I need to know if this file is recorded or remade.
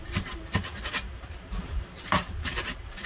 remade